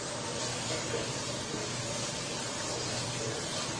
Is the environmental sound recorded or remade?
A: recorded